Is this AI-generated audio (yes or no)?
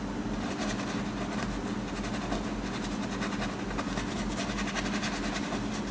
no